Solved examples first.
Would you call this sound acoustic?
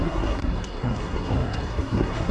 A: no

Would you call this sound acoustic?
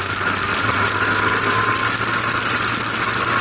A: yes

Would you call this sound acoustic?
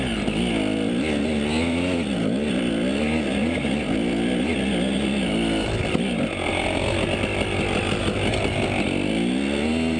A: yes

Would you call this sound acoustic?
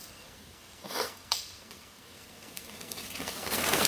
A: no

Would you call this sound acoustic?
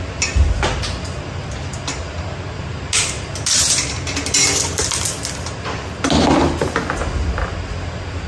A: yes